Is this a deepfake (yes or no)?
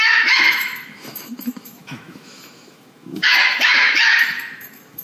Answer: yes